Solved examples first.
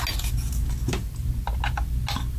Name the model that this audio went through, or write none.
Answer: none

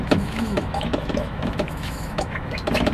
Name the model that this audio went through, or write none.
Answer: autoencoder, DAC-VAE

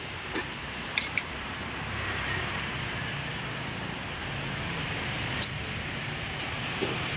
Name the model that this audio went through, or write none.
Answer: vocoder, BigVGAN v2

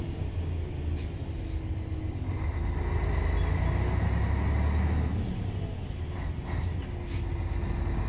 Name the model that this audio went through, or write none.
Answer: none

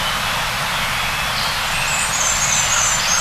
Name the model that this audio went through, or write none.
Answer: none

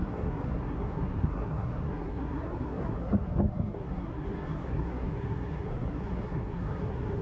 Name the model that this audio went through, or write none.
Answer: codec, SNAC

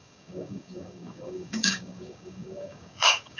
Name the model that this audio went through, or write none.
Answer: codec, DAC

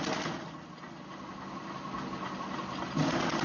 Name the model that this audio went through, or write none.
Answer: none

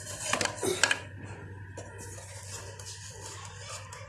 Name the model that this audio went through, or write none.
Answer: none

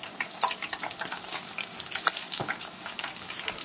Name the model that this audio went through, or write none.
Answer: codec, DAC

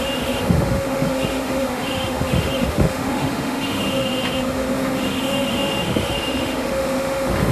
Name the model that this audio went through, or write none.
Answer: autoencoder, DAC-VAE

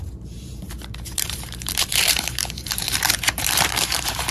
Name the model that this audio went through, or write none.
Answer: vocoder, BigVGAN v2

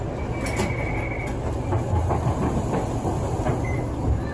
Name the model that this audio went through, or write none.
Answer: none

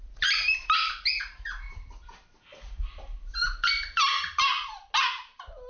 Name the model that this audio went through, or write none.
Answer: none